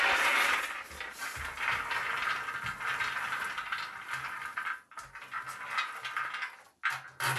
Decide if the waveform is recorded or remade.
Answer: recorded